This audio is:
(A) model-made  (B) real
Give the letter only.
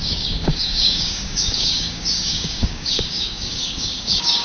A